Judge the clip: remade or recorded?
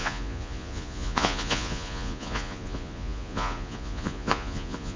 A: remade